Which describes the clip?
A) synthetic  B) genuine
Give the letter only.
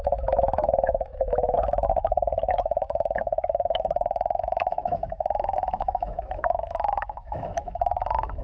A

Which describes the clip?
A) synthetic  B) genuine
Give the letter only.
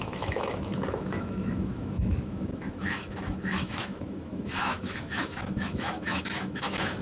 A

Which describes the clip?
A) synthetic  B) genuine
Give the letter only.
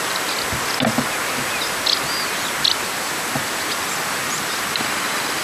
B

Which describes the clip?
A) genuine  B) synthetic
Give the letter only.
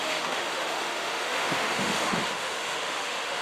B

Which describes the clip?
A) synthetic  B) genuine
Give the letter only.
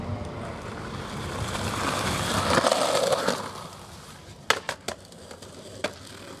B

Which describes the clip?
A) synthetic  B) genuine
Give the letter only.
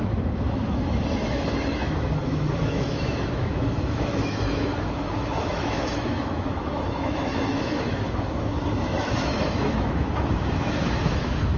A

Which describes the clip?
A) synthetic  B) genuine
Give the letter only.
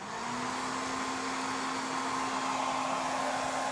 B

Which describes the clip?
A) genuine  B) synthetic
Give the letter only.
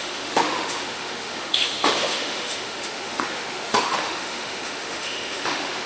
B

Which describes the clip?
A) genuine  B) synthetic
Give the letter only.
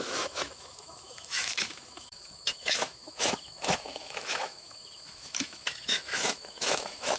B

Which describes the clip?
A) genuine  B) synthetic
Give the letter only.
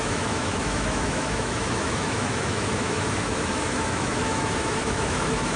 B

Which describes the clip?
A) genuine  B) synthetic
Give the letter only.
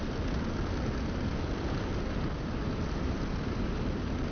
A